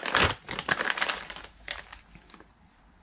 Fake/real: real